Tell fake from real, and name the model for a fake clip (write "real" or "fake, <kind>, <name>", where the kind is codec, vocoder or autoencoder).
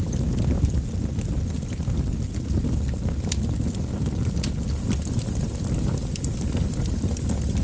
real